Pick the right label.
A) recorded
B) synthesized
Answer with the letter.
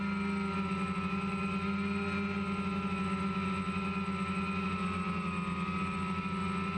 A